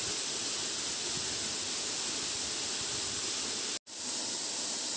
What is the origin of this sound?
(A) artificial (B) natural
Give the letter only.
B